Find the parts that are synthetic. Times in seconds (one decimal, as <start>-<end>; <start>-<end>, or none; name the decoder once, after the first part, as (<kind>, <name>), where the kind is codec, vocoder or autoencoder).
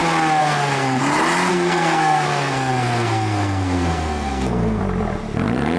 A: 0.4-1.0 (codec, SNAC); 1.5-4.8